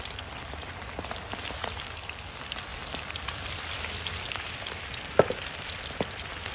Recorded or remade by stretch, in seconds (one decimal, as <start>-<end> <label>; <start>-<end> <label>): 0.0-2.7 recorded; 2.7-5.9 remade; 5.9-6.5 recorded

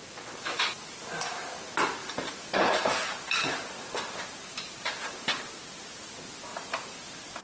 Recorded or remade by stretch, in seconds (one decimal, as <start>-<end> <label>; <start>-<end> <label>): 0.0-2.0 recorded; 2.0-5.4 remade; 5.4-6.5 recorded; 6.5-7.4 remade

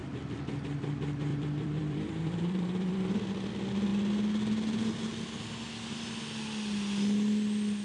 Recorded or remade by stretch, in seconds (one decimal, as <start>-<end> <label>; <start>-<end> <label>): 0.0-1.3 recorded; 1.3-3.2 remade; 3.2-7.8 recorded

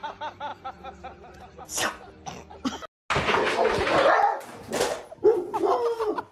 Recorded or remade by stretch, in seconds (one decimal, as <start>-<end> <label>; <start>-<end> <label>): 0.0-6.3 recorded

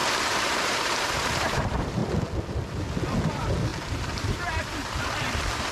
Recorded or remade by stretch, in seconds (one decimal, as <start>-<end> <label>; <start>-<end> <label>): 0.0-2.0 remade; 2.0-3.3 recorded; 3.3-5.7 remade

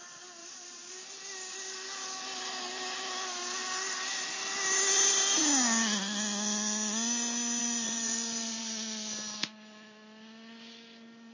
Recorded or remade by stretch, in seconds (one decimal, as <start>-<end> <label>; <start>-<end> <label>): 0.0-0.4 recorded; 0.4-0.9 remade; 0.9-7.6 recorded; 7.6-8.6 remade; 8.6-11.3 recorded

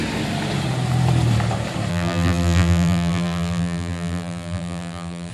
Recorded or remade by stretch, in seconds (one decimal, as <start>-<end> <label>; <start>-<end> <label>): 0.0-1.9 recorded; 1.9-5.3 remade